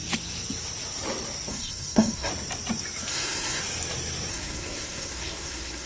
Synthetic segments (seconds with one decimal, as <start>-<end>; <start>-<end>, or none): 1.5-2.3; 3.1-3.6; 4.3-5.9